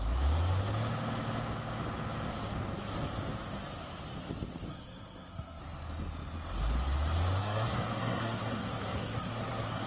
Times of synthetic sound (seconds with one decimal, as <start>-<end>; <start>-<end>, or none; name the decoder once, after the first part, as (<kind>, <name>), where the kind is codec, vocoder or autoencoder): 4.7-5.6 (codec, SNAC); 7.4-9.9